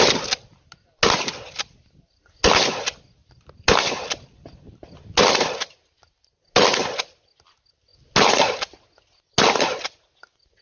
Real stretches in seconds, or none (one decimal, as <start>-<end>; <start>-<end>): 0.0-10.6